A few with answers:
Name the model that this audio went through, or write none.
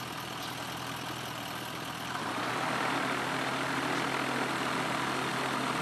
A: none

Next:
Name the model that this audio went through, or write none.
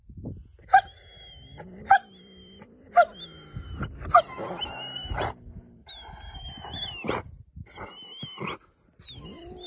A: none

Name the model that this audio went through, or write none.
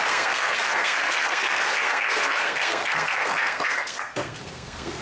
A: codec, SNAC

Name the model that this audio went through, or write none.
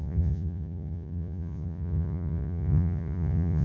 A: vocoder, Vocos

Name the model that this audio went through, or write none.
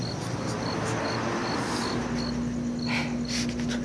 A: none